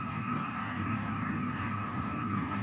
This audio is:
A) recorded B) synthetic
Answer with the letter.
B